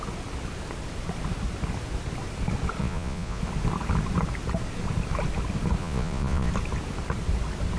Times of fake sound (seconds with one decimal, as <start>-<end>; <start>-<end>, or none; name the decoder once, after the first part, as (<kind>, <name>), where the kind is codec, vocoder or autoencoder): 2.8-3.4 (vocoder, Vocos); 5.8-6.5